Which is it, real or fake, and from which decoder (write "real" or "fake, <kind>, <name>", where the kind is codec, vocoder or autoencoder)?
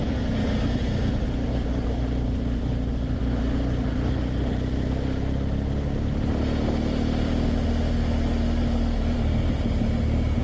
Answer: real